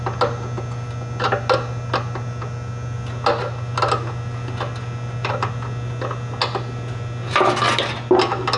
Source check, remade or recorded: recorded